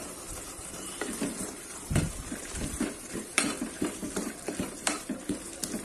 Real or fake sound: fake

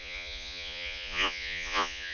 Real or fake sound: fake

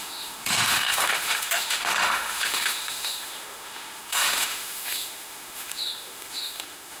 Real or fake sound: fake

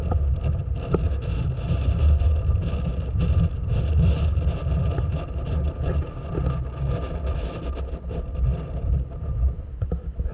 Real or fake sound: real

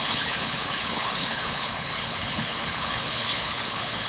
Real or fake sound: fake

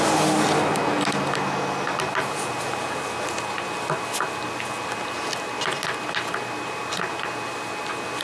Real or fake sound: real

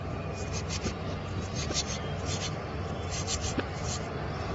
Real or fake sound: real